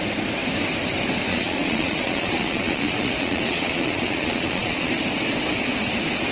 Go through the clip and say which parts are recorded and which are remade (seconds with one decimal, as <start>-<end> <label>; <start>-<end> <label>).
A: 0.0-1.3 recorded; 1.3-4.9 remade; 4.9-6.3 recorded